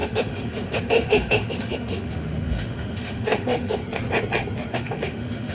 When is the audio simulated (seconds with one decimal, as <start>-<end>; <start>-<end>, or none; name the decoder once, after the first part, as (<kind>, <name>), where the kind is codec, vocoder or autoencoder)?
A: 0.0-3.8 (autoencoder, DAC-VAE); 4.7-5.5